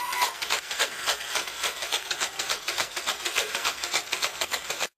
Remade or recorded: remade